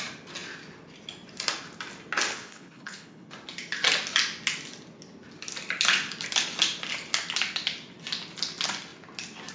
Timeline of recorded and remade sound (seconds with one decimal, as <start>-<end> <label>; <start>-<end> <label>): 0.0-2.3 recorded; 2.3-3.3 remade; 3.3-9.5 recorded